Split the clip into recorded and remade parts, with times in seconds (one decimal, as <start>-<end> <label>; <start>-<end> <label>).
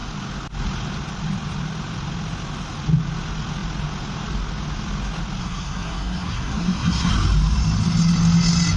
0.0-5.4 recorded; 5.4-7.1 remade; 7.1-8.8 recorded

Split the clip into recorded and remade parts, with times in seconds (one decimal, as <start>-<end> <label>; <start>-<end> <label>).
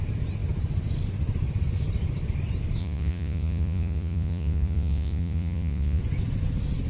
0.0-2.8 recorded; 2.8-6.0 remade; 6.0-6.9 recorded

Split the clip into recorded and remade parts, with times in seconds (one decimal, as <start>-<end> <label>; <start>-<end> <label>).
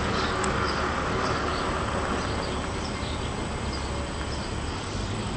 0.0-1.5 remade; 1.5-4.7 recorded; 4.7-5.4 remade